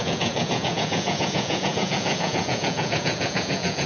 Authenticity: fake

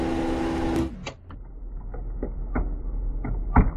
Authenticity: real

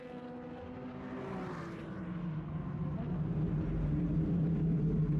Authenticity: real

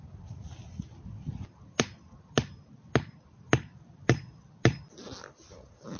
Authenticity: real